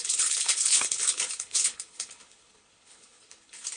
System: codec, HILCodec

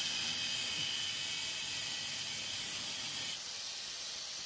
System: none